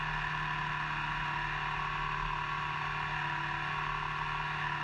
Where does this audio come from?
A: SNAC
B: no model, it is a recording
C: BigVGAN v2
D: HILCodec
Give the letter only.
B